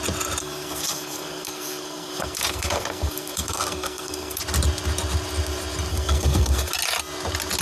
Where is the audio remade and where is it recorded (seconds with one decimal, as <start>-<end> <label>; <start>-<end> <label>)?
0.0-0.4 recorded; 0.4-4.4 remade; 4.4-5.9 recorded; 5.9-6.7 remade; 6.7-7.6 recorded